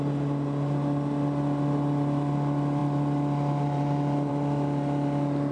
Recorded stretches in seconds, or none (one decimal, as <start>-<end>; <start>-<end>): 0.0-2.8; 4.3-5.5